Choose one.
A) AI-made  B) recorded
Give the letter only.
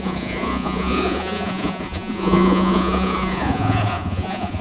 A